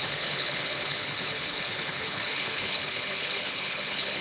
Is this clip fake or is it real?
fake